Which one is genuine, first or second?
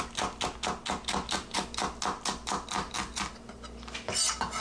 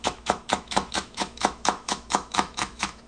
first